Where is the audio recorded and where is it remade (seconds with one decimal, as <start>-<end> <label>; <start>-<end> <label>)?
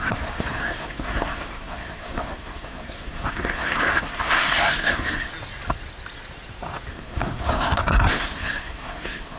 0.0-5.3 remade; 5.3-6.9 recorded; 6.9-9.4 remade